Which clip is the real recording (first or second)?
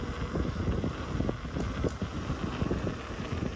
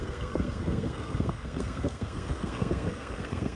first